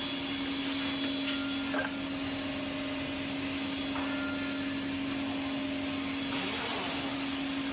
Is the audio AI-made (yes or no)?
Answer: no